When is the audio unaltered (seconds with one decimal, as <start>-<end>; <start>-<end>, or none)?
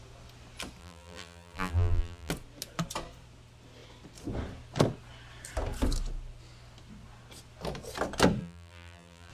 0.0-0.8; 2.3-8.4